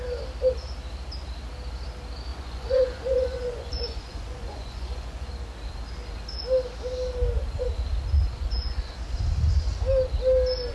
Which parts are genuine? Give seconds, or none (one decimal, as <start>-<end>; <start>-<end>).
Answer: 0.0-2.3; 5.3-8.3; 8.9-10.7